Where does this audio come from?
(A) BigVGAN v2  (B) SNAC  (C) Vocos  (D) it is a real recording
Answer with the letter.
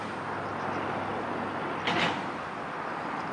D